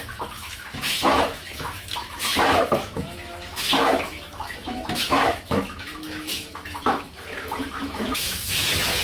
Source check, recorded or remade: remade